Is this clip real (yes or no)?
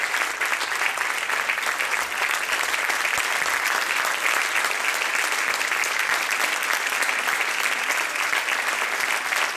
yes